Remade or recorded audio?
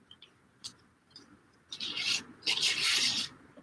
remade